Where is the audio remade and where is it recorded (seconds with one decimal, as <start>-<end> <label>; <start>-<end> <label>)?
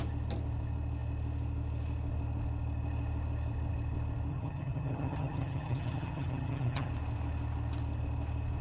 0.0-4.3 recorded; 4.3-6.9 remade; 6.9-8.6 recorded